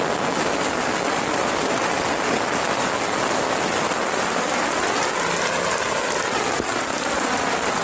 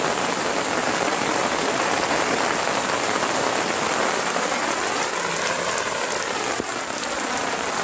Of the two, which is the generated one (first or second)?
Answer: second